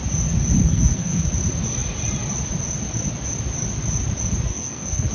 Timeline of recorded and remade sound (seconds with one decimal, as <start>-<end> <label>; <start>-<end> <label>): 0.0-0.6 recorded; 0.6-1.3 remade; 1.3-4.5 recorded; 4.5-5.1 remade